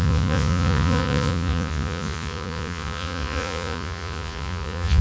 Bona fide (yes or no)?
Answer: no